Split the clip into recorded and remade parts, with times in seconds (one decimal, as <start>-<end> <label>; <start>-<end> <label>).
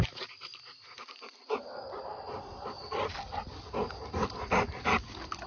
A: 0.0-5.5 recorded